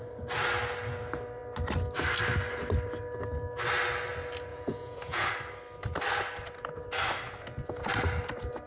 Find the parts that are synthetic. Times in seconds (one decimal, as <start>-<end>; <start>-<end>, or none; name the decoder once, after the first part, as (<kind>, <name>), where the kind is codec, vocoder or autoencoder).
4.5-5.3 (vocoder, Vocos)